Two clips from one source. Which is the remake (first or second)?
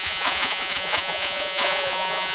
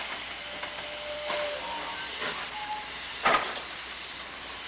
first